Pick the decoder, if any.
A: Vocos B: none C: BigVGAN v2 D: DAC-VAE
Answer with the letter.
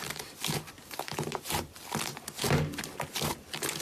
B